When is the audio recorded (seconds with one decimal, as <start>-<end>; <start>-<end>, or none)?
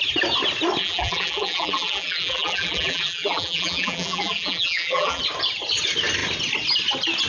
0.0-0.8; 5.2-7.3